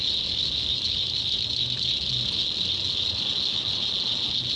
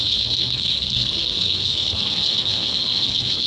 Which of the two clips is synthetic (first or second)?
second